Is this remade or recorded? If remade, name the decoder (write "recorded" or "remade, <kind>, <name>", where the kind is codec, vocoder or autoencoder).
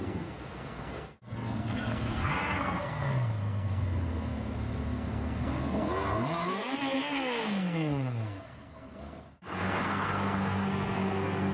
remade, codec, SNAC